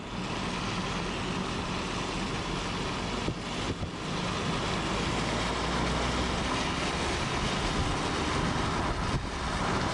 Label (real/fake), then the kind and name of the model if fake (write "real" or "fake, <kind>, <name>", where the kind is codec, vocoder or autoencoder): real